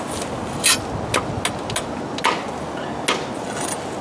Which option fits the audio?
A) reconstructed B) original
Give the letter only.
B